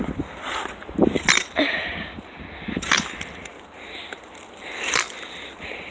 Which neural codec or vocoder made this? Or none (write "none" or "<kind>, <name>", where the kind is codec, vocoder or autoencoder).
none